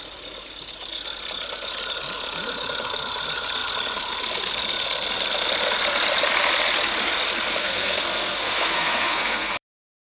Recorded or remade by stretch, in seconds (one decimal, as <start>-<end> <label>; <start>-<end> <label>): 0.0-7.6 recorded; 7.6-9.5 remade; 9.5-10.0 recorded